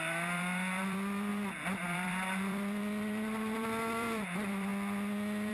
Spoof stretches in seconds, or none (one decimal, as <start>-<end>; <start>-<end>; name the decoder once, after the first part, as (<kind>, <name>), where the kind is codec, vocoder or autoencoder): 0.0-4.7 (vocoder, BigVGAN v2)